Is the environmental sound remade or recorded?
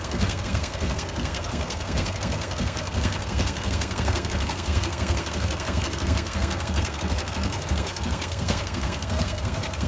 remade